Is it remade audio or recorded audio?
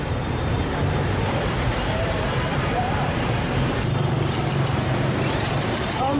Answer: remade